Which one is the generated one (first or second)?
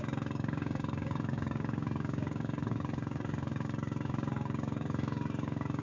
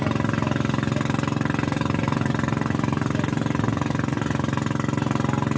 first